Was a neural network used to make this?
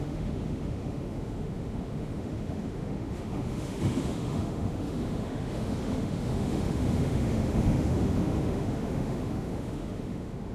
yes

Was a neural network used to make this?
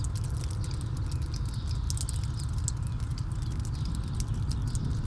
no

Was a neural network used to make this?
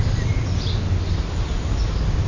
no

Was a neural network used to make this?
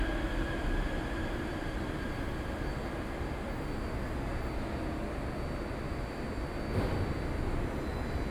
no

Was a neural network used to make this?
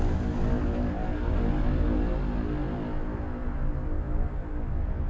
no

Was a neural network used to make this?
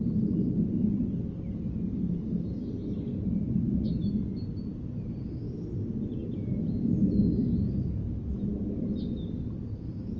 no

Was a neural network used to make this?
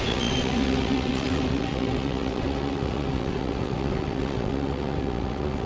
yes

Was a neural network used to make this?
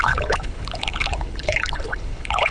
yes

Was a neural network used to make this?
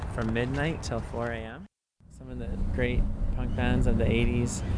no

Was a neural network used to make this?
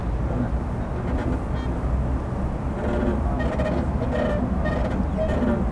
no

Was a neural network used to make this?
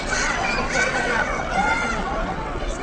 yes